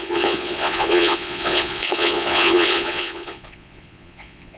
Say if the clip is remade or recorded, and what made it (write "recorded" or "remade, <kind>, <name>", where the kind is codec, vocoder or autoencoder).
remade, vocoder, Vocos